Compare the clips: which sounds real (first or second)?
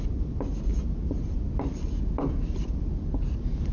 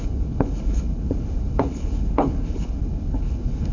first